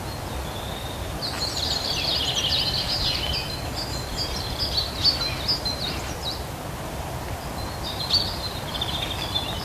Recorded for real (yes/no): yes